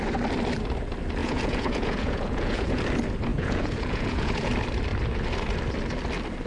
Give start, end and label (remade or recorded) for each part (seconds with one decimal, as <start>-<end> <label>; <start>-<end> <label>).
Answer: 0.0-1.2 recorded; 1.2-2.8 remade; 2.8-3.3 recorded; 3.3-4.5 remade; 4.5-6.5 recorded